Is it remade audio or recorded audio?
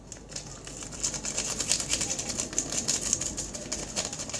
recorded